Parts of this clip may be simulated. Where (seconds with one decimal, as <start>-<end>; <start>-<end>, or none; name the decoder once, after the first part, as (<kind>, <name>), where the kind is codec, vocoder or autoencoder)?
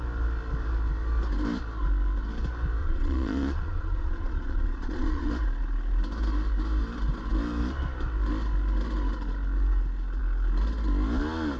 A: 2.8-5.3 (vocoder, Vocos)